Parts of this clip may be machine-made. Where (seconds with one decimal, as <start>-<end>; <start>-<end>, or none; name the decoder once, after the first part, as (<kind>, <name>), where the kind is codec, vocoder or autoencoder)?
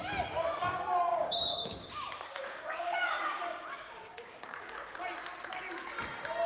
1.1-5.0 (codec, DAC)